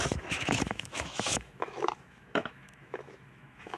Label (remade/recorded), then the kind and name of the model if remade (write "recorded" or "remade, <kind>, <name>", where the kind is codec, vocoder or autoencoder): remade, autoencoder, DAC-VAE